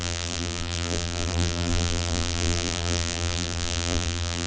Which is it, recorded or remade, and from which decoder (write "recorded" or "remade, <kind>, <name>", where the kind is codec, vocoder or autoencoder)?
remade, vocoder, BigVGAN v2